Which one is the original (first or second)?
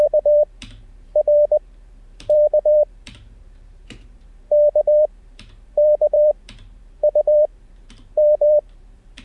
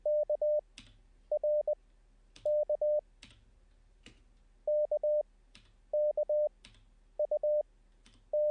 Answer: second